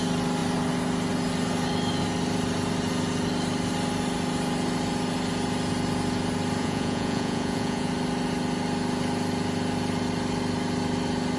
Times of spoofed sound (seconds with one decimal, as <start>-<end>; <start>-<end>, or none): 6.6-7.9